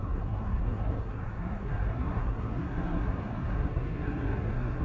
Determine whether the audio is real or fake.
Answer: fake